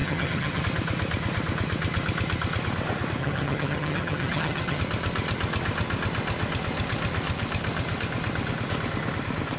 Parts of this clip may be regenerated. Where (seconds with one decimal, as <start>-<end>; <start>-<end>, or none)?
0.0-0.6; 3.2-4.8